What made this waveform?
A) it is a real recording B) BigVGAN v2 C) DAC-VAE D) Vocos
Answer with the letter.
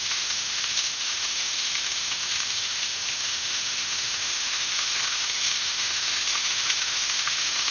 C